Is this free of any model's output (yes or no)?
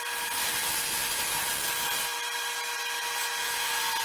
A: yes